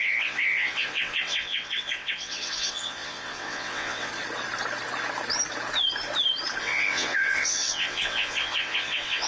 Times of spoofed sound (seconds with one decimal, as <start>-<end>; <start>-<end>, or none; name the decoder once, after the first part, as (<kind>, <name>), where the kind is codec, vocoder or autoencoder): 0.0-4.1 (vocoder, WaveNeXt); 6.6-9.3